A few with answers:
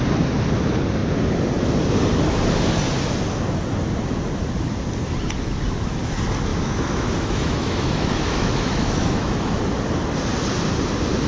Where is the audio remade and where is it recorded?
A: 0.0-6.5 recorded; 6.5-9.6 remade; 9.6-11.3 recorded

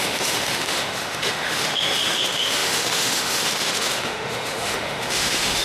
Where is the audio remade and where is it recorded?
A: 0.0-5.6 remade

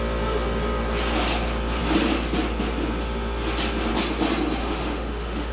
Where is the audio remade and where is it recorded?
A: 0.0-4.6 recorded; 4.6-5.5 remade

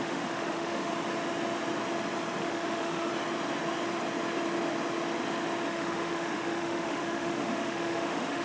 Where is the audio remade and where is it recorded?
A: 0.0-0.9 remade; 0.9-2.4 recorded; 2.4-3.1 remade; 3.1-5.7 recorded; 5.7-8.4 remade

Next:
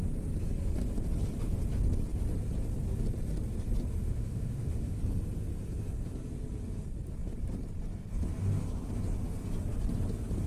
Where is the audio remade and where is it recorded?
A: 0.0-4.0 recorded; 4.0-5.0 remade; 5.0-10.5 recorded